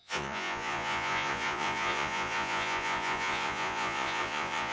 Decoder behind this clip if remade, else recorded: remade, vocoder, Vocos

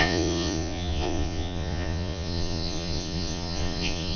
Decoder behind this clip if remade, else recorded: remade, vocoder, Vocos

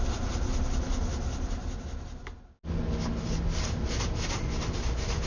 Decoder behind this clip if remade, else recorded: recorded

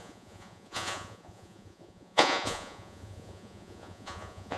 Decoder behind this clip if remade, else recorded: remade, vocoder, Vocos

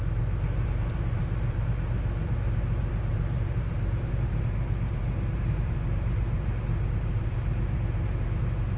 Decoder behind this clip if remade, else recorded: remade, vocoder, BigVGAN v2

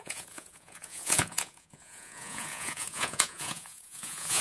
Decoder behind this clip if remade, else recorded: remade, vocoder, Vocos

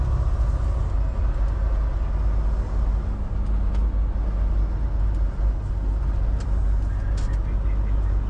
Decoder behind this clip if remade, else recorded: recorded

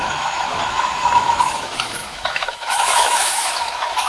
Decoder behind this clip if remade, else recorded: remade, autoencoder, DAC-VAE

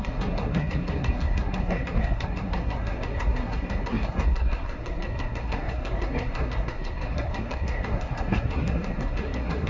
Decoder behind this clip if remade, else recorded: remade, codec, SNAC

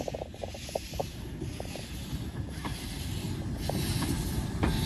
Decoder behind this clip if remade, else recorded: recorded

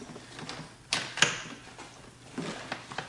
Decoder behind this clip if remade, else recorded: recorded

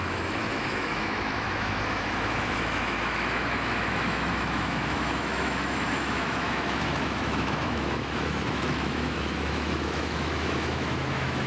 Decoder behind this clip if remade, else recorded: remade, autoencoder, DAC-VAE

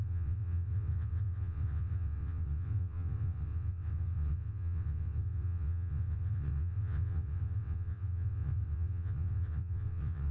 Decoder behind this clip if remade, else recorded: remade, vocoder, WaveNeXt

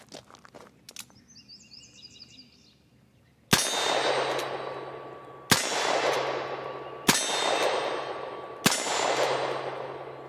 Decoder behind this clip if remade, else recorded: recorded